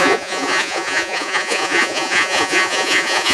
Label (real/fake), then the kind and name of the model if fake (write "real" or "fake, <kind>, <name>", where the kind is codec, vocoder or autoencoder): fake, vocoder, Vocos